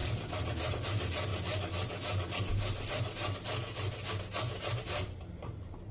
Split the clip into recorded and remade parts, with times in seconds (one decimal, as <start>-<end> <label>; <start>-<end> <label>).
0.0-0.7 recorded; 0.7-1.3 remade; 1.3-4.8 recorded; 4.8-5.9 remade